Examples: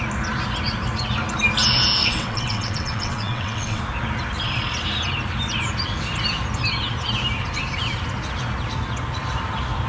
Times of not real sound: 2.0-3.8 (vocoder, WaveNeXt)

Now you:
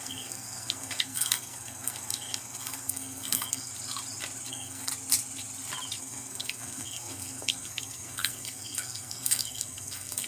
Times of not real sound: 0.0-3.7 (codec, SNAC); 4.5-4.9; 6.0-10.3

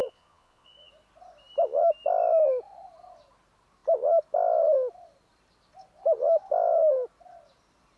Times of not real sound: 0.0-0.9 (vocoder, Vocos)

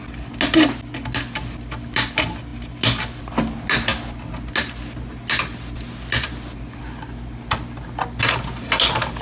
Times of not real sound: none

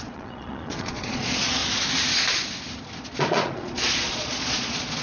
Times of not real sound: 0.0-1.6 (vocoder, Vocos); 3.0-5.0